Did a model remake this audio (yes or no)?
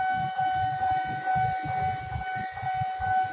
no